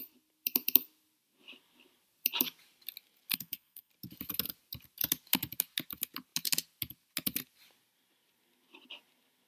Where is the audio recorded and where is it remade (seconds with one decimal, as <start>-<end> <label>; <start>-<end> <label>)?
0.0-3.3 recorded; 3.3-3.9 remade; 3.9-9.5 recorded